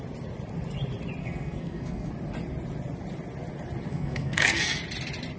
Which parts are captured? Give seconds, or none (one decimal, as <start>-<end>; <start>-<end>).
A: 0.0-1.2; 2.1-3.9; 4.8-5.4